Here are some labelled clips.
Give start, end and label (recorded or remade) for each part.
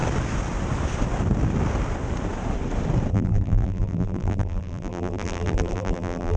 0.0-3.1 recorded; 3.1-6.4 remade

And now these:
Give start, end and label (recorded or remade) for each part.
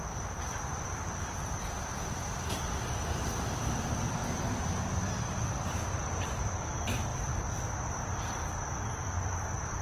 0.0-4.2 remade; 4.2-5.2 recorded; 5.2-7.1 remade; 7.1-7.9 recorded; 7.9-9.8 remade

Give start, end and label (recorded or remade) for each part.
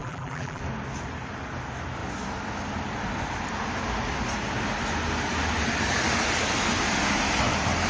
0.0-0.6 remade; 0.6-7.9 recorded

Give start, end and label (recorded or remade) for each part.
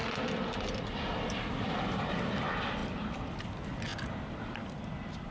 0.0-0.8 recorded; 0.8-5.3 remade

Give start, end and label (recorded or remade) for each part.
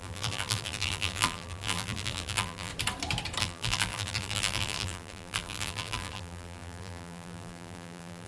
0.0-2.7 remade; 2.7-3.4 recorded; 3.4-8.3 remade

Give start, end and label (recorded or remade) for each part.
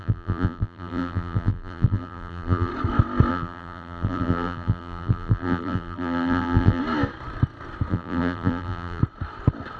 0.0-2.7 remade; 2.7-3.3 recorded; 3.3-6.8 remade; 6.8-7.9 recorded; 7.9-9.0 remade; 9.0-9.8 recorded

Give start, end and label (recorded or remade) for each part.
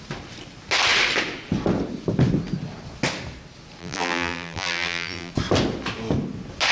0.0-3.8 recorded; 3.8-5.3 remade; 5.3-6.7 recorded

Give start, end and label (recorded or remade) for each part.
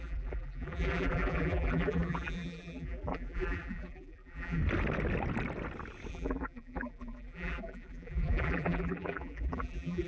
0.0-4.6 remade; 4.6-6.1 recorded; 6.1-10.1 remade